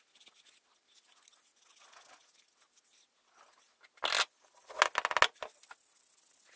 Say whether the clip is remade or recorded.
recorded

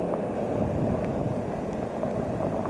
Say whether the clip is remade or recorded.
recorded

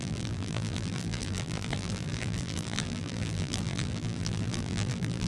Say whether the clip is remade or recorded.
remade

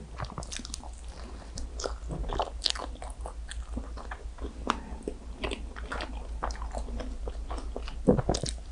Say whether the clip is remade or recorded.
recorded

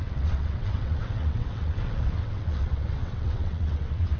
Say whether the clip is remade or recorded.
remade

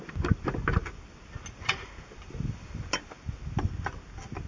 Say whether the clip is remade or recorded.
recorded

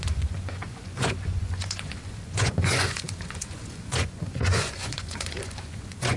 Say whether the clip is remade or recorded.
remade